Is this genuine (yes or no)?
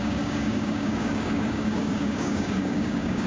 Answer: no